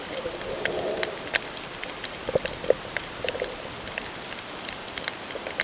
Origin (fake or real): real